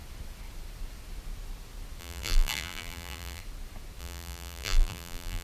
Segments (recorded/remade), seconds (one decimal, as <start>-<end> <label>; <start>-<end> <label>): 0.0-2.0 recorded; 2.0-3.4 remade; 3.4-4.0 recorded; 4.0-5.4 remade